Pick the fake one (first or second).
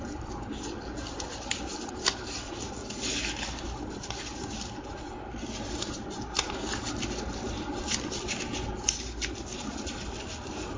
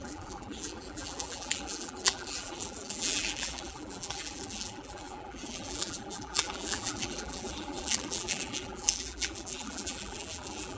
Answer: second